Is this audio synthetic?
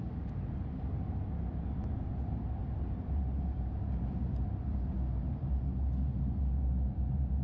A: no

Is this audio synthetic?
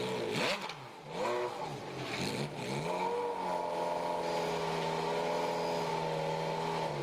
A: no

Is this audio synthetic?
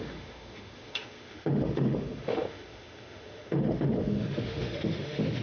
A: yes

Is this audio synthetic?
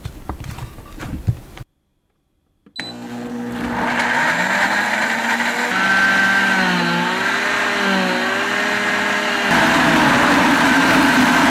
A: no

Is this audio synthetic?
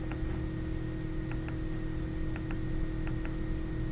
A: no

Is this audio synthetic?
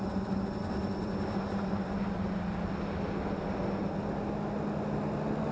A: no